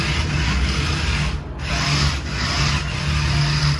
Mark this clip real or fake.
real